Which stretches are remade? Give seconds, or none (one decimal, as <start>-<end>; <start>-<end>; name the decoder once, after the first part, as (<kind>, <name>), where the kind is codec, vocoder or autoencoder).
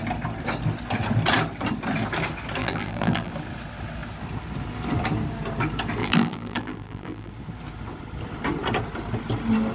2.6-3.3 (vocoder, BigVGAN v2); 6.0-7.3